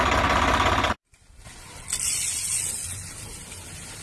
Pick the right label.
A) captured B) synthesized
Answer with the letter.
A